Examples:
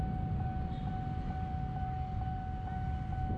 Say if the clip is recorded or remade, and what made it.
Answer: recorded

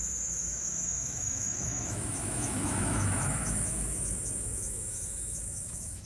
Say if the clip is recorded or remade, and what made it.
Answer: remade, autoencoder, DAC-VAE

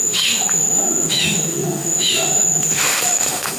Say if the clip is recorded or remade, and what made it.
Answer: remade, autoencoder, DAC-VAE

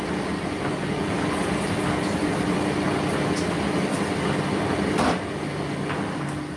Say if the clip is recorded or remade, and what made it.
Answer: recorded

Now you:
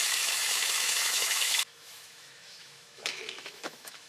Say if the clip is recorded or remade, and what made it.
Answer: remade, autoencoder, DAC-VAE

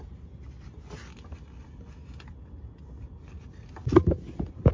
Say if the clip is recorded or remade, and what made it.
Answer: recorded